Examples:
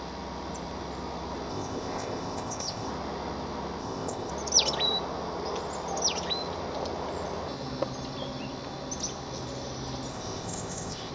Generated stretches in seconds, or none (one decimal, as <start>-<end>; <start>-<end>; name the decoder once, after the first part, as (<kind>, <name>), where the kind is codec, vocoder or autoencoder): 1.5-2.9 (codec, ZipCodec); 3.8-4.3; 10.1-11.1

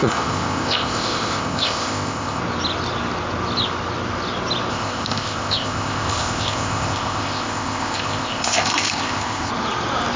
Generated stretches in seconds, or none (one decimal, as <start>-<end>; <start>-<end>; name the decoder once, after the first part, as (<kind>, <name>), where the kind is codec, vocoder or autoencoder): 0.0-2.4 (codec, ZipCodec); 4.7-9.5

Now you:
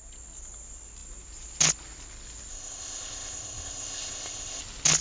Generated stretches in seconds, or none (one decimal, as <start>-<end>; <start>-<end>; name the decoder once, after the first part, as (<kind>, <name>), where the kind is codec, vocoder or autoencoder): 2.5-4.6 (codec, ZipCodec)